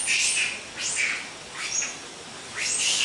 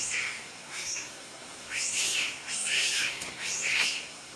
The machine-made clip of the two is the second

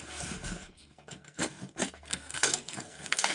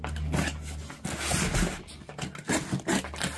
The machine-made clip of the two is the first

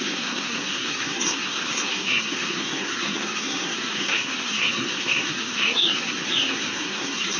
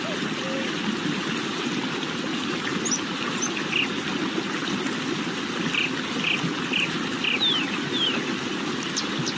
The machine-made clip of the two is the first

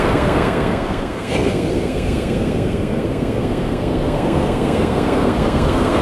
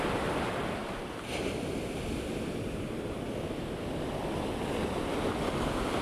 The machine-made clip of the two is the first